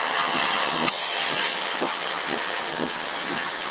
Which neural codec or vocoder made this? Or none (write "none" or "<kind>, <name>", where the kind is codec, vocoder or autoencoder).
vocoder, HiFi-GAN